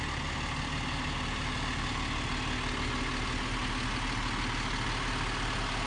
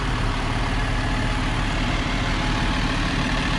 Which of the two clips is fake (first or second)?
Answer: second